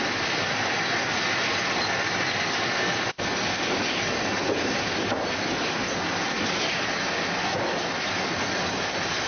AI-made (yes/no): no